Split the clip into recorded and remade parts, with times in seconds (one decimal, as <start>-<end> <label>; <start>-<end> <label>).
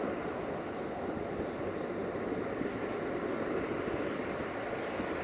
0.0-5.2 recorded